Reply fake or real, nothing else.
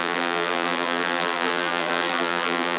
fake